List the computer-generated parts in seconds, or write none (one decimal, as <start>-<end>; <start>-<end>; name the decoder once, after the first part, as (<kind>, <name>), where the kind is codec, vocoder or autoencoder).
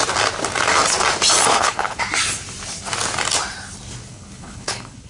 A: 1.5-2.0 (codec, HILCodec); 4.1-5.1